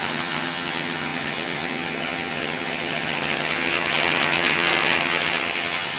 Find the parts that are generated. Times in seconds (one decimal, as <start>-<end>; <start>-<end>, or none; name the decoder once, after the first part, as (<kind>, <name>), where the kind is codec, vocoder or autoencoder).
0.0-6.0 (vocoder, HiFi-GAN)